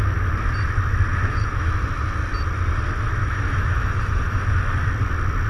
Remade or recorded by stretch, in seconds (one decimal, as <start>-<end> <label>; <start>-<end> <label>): 0.0-1.1 recorded; 1.1-1.7 remade; 1.7-3.2 recorded; 3.2-4.6 remade; 4.6-5.5 recorded

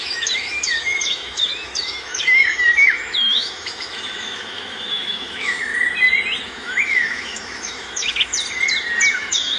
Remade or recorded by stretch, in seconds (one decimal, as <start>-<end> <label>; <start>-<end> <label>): 0.0-5.7 remade; 5.7-6.4 recorded; 6.4-8.3 remade; 8.3-9.1 recorded; 9.1-9.6 remade

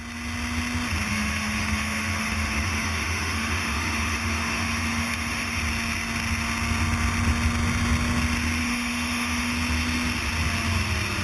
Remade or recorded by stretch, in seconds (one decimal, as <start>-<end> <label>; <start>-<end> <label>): 0.0-1.1 recorded; 1.1-5.6 remade; 5.6-8.6 recorded; 8.6-9.5 remade; 9.5-11.2 recorded

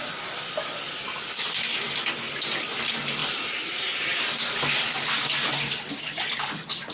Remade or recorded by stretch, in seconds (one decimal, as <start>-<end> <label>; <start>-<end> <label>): 0.0-6.9 recorded